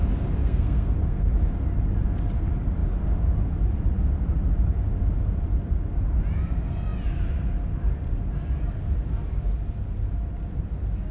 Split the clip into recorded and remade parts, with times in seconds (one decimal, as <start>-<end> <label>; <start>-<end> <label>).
0.0-0.4 recorded; 0.4-1.3 remade; 1.3-11.1 recorded